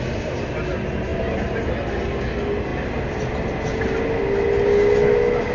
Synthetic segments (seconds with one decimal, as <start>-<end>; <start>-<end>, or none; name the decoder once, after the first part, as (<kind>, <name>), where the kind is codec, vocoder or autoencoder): 1.1-1.7 (vocoder, BigVGAN v2)